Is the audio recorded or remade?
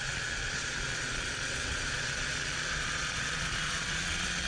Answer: remade